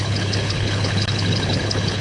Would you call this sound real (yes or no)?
no